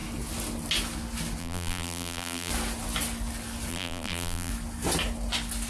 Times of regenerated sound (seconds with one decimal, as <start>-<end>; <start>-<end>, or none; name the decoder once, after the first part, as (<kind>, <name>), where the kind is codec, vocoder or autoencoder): 1.4-2.5 (vocoder, BigVGAN v2); 3.7-4.5